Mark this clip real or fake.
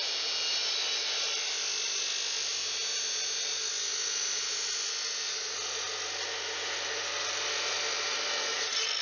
real